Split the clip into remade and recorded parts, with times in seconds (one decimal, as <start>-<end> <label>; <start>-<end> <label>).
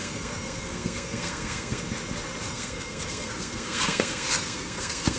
0.0-1.8 remade; 1.8-2.5 recorded; 2.5-5.2 remade